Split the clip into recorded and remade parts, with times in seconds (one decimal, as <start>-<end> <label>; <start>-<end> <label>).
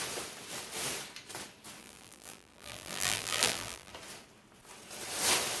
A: 0.0-1.8 recorded; 1.8-3.9 remade; 3.9-5.6 recorded